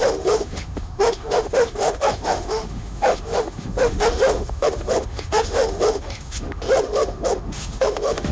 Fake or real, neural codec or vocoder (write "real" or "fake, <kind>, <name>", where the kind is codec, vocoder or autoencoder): fake, autoencoder, DAC-VAE